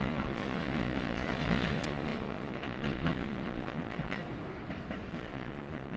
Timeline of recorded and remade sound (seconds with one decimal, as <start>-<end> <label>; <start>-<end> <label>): 0.0-4.2 remade; 4.2-5.1 recorded; 5.1-6.0 remade